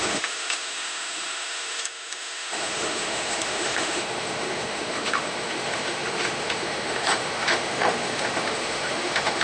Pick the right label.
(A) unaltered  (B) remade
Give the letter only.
B